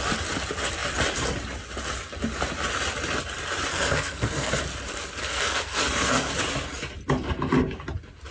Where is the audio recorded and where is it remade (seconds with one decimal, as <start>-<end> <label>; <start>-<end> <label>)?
0.0-3.7 recorded; 3.7-4.6 remade; 4.6-5.2 recorded; 5.2-6.3 remade; 6.3-8.3 recorded